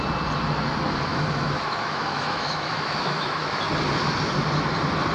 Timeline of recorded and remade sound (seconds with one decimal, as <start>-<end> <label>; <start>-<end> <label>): 0.0-1.1 recorded; 1.1-3.6 remade; 3.6-5.1 recorded